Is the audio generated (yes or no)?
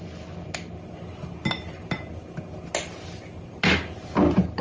no